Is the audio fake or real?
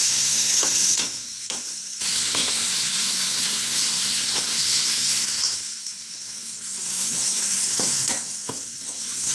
fake